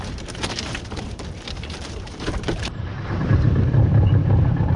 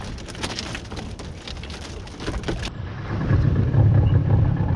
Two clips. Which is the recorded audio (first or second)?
second